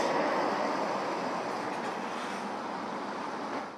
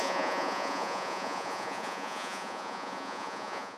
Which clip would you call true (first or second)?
first